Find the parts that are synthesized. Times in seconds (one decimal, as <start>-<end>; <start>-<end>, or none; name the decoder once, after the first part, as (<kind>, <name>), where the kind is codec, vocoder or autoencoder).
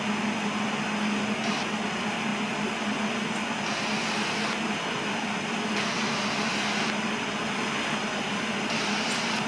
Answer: none